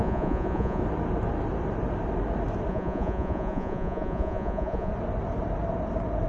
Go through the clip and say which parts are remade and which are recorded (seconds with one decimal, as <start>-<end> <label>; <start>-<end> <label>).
0.0-0.8 remade; 0.8-2.7 recorded; 2.7-4.9 remade; 4.9-6.3 recorded